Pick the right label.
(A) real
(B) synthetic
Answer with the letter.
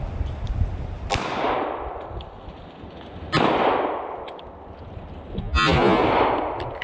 A